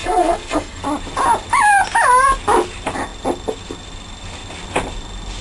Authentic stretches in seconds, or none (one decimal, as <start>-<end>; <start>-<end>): 0.8-5.4